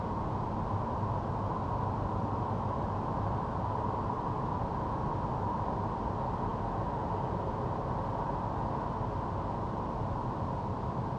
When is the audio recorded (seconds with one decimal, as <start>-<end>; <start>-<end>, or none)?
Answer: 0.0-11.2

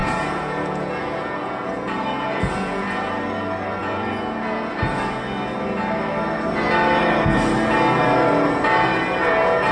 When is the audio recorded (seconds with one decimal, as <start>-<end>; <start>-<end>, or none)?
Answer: 3.2-3.8; 5.2-9.7

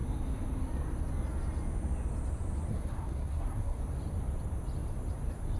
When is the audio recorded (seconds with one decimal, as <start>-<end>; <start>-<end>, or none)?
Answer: 0.0-2.7; 3.8-5.6

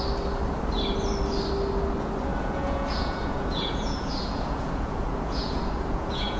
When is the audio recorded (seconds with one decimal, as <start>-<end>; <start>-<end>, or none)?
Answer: 0.0-2.3

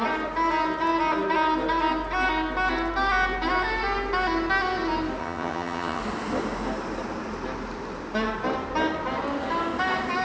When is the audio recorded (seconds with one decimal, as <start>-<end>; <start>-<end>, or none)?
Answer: 0.0-5.2; 6.0-10.2